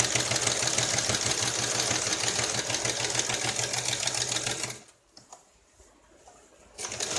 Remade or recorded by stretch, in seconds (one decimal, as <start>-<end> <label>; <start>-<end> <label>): 0.0-7.2 recorded